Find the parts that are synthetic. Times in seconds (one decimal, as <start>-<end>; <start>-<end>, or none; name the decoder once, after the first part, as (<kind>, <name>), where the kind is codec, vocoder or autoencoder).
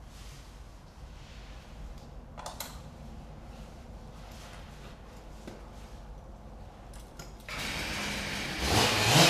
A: 0.7-4.1 (vocoder, BigVGAN v2)